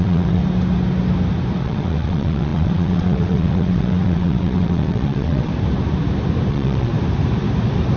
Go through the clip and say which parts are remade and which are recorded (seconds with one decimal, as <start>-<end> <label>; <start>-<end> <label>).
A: 0.0-0.4 remade; 0.4-1.6 recorded; 1.6-5.5 remade; 5.5-6.5 recorded; 6.5-6.9 remade; 6.9-8.0 recorded